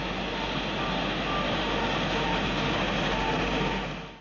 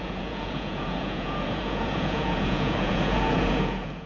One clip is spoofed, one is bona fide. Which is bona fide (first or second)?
first